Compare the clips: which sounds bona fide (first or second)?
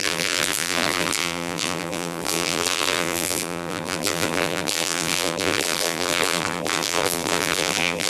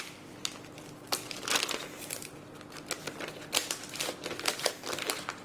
second